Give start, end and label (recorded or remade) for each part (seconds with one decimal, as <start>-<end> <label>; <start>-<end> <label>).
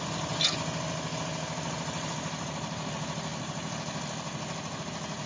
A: 0.0-5.3 recorded